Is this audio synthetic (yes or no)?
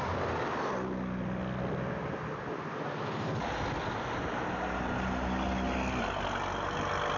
no